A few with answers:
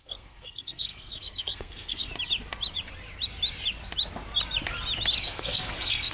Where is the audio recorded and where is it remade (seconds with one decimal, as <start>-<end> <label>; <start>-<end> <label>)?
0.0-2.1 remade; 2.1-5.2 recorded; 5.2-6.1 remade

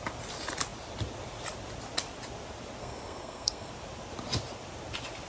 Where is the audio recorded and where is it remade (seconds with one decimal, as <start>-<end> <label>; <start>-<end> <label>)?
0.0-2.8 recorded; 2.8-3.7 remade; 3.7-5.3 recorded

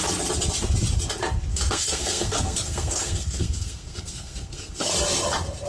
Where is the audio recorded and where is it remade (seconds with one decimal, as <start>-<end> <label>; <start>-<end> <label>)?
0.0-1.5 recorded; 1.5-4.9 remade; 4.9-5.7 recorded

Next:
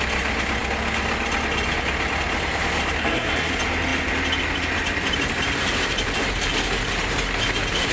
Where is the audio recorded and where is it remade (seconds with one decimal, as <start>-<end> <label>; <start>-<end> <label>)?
0.0-3.0 recorded; 3.0-3.5 remade; 3.5-7.9 recorded

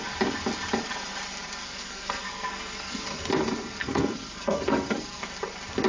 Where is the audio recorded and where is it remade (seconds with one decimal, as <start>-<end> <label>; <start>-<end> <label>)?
0.0-1.6 recorded; 1.6-3.3 remade; 3.3-3.8 recorded; 3.8-5.2 remade; 5.2-5.9 recorded